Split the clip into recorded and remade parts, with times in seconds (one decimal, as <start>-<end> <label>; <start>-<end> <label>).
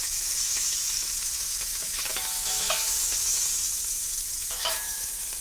0.0-5.4 remade